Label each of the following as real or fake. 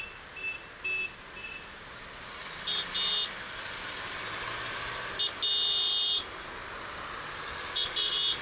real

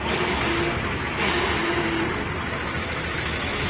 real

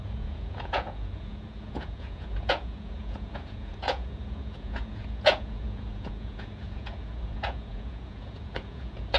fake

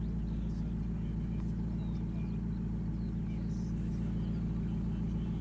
real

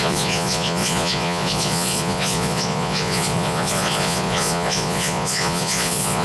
fake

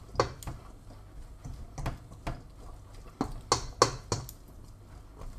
real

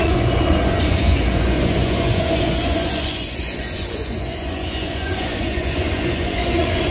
fake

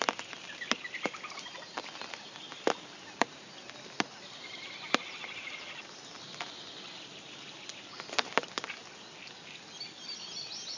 real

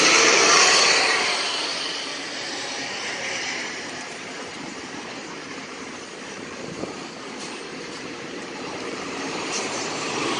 fake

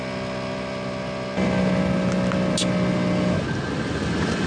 real